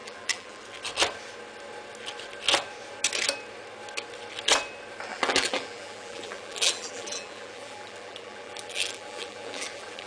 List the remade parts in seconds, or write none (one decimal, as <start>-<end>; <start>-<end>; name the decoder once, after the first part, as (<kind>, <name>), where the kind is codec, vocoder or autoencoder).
0.0-0.6 (vocoder, BigVGAN v2); 5.1-10.1